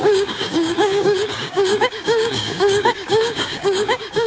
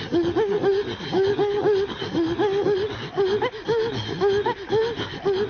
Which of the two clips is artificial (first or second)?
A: first